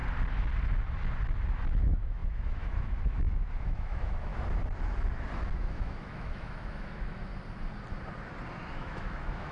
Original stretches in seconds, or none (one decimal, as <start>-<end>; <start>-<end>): 0.0-1.5; 4.3-5.5; 7.3-8.7